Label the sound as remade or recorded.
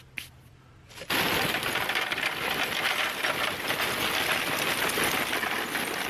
recorded